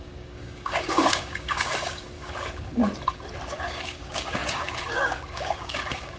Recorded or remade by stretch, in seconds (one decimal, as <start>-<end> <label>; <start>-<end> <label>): 0.0-2.8 remade; 2.8-3.5 recorded; 3.5-6.2 remade